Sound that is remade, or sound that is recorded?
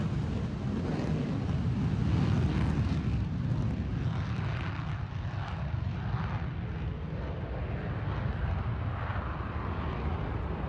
recorded